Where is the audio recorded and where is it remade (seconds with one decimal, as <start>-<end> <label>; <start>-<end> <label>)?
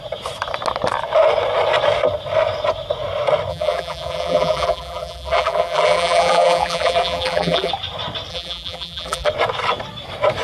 0.0-3.5 recorded; 3.5-7.7 remade; 7.7-8.3 recorded; 8.3-9.3 remade; 9.3-10.4 recorded